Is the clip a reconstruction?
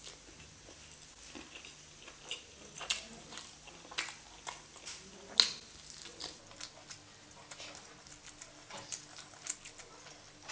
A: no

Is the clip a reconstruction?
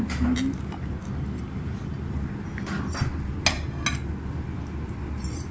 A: no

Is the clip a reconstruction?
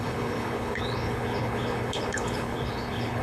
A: yes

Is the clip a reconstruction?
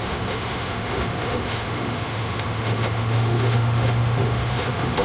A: yes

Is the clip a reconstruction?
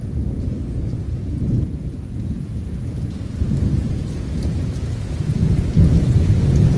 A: yes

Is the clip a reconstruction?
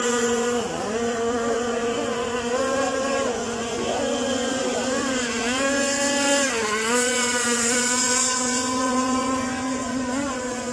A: yes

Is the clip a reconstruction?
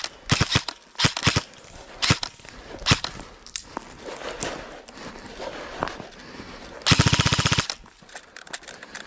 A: no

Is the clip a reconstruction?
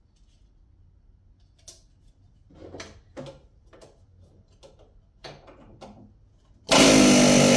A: no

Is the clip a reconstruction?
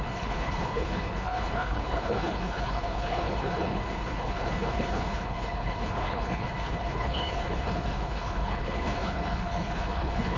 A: yes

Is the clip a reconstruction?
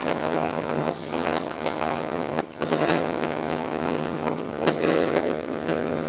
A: yes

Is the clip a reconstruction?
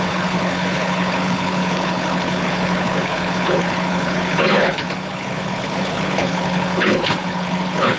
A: yes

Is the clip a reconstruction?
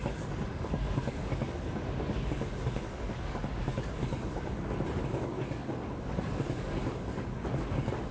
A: yes